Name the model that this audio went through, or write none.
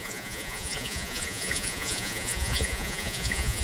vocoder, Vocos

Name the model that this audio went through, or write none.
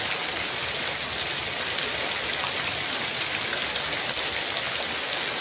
none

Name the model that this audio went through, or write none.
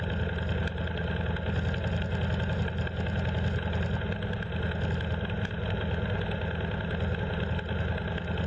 none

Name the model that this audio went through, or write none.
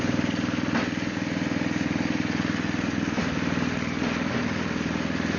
none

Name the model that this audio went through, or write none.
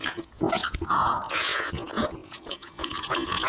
vocoder, Vocos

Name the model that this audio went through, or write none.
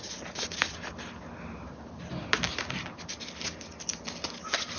none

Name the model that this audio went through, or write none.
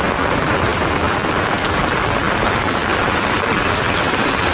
none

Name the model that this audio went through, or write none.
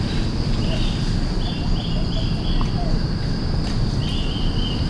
none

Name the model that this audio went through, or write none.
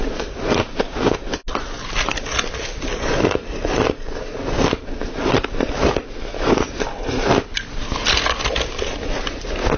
none